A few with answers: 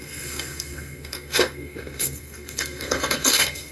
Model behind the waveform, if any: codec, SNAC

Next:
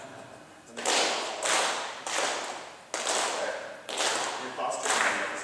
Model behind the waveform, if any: none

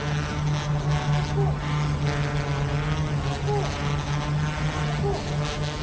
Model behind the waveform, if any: none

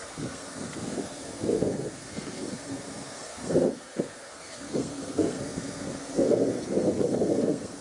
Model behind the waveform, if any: codec, SNAC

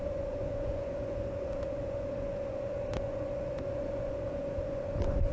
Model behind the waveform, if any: vocoder, Vocos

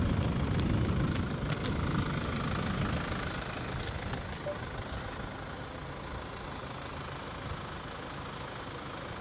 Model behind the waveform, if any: none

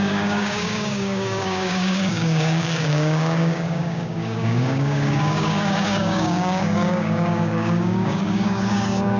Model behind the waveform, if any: codec, DAC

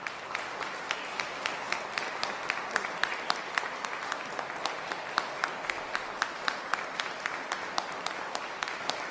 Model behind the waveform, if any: none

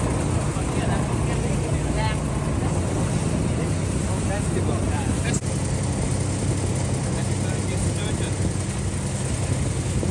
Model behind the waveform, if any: none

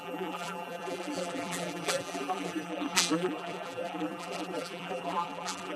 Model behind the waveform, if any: vocoder, BigVGAN v2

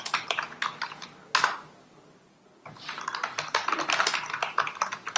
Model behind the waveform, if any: none